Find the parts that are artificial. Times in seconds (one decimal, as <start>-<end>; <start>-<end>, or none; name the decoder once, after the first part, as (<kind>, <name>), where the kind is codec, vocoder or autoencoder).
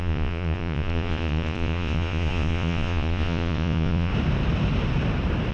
0.0-4.1 (vocoder, Vocos)